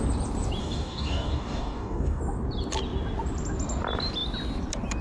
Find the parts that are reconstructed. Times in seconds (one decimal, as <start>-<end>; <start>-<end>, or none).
0.6-2.2